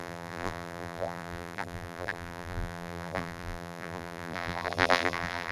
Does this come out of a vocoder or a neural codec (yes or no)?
yes